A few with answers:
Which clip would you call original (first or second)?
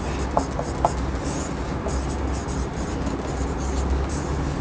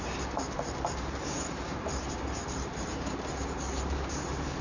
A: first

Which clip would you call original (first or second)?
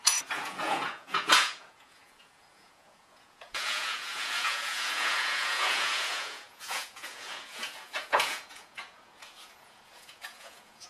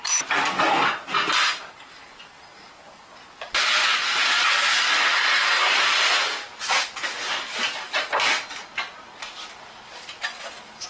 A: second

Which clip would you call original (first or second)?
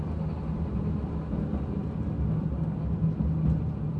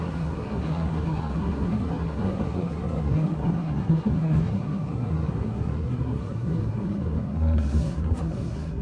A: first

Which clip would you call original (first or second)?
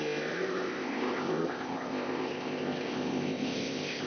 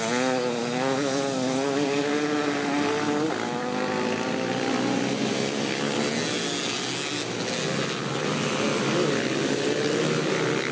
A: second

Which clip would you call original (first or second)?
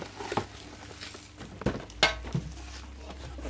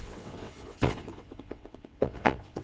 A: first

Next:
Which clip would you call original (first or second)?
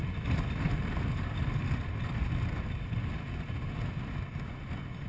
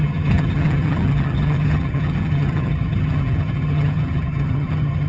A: first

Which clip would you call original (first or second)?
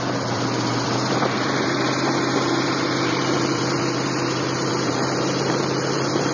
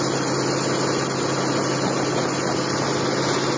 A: second